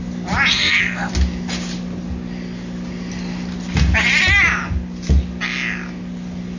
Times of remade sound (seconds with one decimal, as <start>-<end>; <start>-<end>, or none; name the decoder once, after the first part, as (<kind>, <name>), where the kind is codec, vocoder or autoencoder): 0.5-1.1 (codec, SNAC)